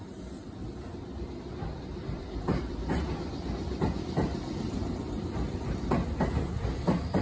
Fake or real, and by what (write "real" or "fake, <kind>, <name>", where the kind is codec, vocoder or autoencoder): real